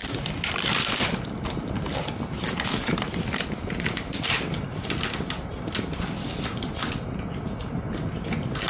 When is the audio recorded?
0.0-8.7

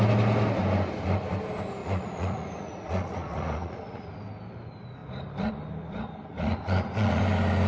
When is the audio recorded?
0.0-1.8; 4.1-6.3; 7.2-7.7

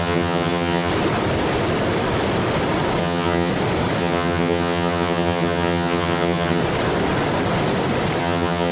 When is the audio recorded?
0.9-3.0; 3.5-4.0; 6.6-8.2

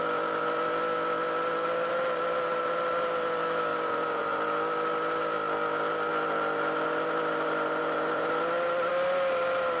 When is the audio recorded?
0.0-3.7; 4.2-9.8

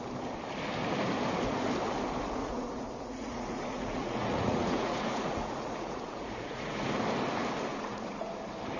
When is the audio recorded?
0.0-2.4; 6.9-7.7; 8.4-8.8

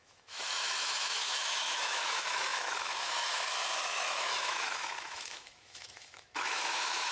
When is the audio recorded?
none

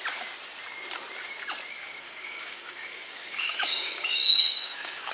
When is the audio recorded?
0.0-1.8

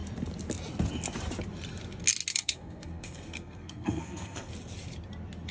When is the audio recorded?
0.0-2.3; 4.5-5.5